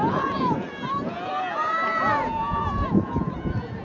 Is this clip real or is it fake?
fake